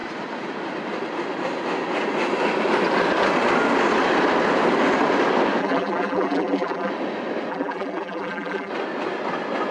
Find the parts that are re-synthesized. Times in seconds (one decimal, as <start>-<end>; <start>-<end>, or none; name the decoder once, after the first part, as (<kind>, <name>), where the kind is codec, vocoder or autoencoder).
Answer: 5.6-6.9 (vocoder, BigVGAN v2); 7.5-8.7